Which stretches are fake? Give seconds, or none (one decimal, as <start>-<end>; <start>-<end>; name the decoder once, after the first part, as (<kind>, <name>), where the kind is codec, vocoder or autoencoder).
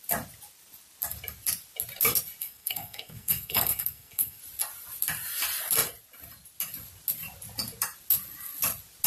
2.4-4.4 (codec, SNAC)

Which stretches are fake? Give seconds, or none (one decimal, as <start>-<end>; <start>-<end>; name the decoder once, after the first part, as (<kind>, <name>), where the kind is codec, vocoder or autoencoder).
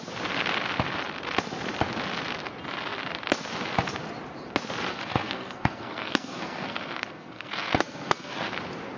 4.9-8.6 (codec, SNAC)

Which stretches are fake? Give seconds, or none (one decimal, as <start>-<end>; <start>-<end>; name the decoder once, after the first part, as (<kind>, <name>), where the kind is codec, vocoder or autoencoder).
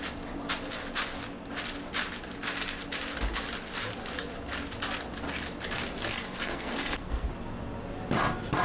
6.1-7.3 (codec, SNAC)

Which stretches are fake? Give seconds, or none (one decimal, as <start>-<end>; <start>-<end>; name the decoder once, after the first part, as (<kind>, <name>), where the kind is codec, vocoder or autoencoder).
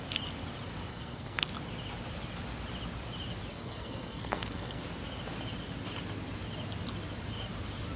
0.9-1.5 (codec, SNAC); 3.5-4.8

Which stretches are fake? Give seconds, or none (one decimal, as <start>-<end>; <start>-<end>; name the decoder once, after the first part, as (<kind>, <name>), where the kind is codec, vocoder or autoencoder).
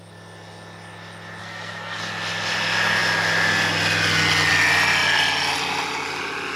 1.4-2.0 (codec, SNAC)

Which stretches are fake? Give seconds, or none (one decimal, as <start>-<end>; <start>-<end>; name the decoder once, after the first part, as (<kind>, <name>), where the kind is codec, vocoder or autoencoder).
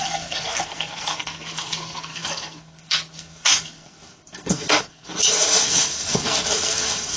0.0-7.2 (codec, SNAC)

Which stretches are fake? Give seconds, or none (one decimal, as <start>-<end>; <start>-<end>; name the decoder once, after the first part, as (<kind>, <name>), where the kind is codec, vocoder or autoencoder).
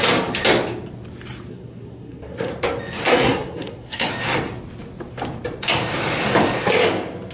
1.5-2.5 (codec, SNAC); 3.1-4.1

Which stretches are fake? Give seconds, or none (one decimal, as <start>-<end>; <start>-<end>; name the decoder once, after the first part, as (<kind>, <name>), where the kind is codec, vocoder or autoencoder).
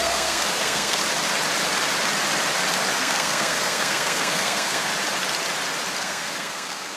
0.0-1.0 (codec, SNAC); 3.0-4.9; 6.0-7.0